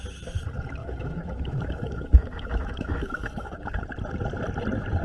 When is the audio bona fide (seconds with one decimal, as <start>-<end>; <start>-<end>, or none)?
0.0-0.8; 3.8-5.0